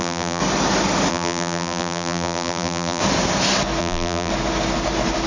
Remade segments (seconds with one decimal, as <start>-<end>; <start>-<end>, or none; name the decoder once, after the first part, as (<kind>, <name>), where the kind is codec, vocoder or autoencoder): 0.0-0.4 (vocoder, BigVGAN v2); 1.1-3.0; 3.8-4.3